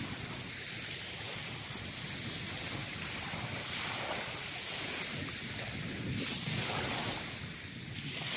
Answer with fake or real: real